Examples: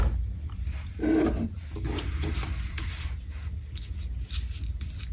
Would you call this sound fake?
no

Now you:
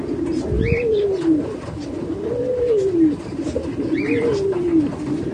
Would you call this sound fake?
no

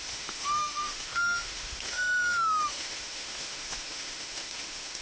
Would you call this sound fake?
yes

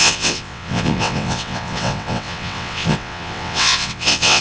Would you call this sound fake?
yes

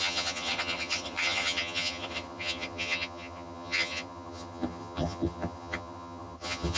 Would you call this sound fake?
yes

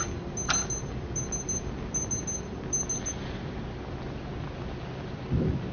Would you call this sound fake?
no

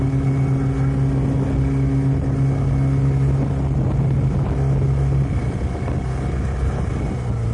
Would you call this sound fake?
no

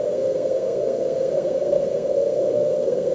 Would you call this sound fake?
yes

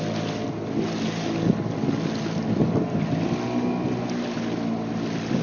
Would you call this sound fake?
no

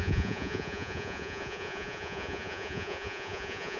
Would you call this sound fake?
yes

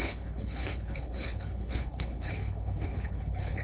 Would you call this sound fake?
yes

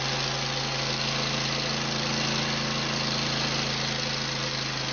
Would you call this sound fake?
no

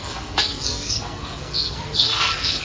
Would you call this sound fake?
yes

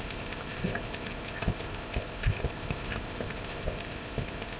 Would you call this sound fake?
yes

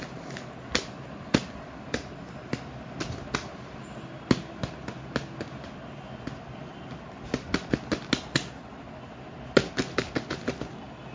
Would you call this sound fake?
no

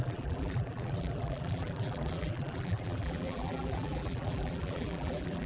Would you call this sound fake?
yes